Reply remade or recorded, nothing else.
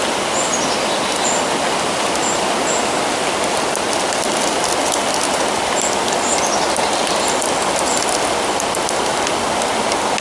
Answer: recorded